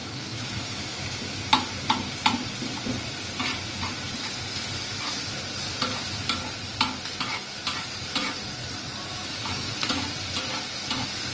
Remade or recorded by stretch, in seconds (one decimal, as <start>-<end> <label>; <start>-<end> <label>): 0.0-0.8 remade; 0.8-9.1 recorded; 9.1-10.0 remade; 10.0-11.3 recorded